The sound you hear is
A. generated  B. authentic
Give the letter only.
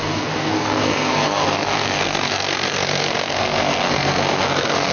A